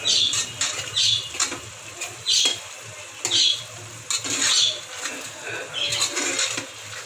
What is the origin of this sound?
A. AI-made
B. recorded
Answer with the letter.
B